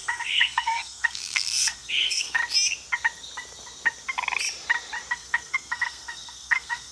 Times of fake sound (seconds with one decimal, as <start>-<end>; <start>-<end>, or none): 0.0-2.4; 5.1-6.9